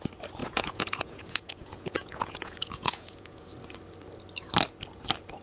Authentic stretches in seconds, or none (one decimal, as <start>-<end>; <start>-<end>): 0.0-0.4; 3.5-5.4